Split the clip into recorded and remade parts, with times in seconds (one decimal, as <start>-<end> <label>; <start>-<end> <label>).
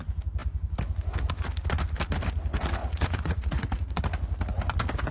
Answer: 0.0-2.8 recorded; 2.8-4.0 remade; 4.0-5.1 recorded